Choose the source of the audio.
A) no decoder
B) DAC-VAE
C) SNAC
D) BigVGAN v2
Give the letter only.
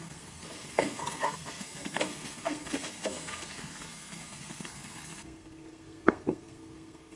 C